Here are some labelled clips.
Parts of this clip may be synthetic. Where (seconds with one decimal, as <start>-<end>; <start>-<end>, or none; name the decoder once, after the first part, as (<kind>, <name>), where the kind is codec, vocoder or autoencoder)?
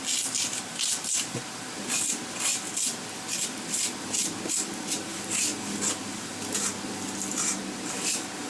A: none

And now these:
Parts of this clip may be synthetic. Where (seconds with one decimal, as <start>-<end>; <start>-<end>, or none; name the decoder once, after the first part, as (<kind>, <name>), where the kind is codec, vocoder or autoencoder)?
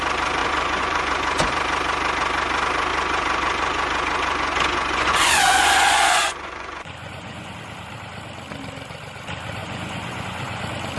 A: 0.4-1.5 (vocoder, Vocos); 2.9-7.5; 9.6-10.6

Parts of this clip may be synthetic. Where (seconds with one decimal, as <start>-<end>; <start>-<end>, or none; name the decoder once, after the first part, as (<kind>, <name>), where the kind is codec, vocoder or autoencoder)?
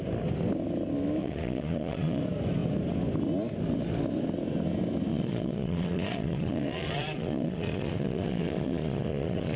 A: 1.2-2.2 (vocoder, Vocos); 5.1-9.6